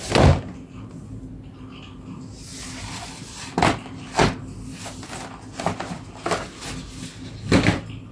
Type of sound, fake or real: real